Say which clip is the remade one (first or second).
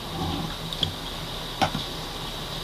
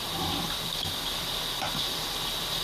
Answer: second